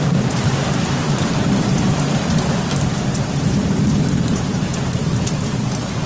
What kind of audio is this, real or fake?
fake